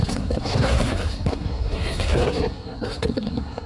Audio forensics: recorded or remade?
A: remade